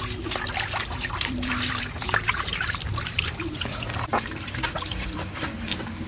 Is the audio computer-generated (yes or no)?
yes